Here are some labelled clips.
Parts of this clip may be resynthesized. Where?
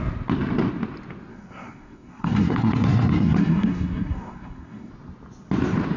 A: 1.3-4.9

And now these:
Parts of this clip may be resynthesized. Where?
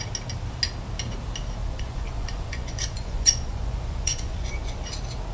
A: 1.6-4.8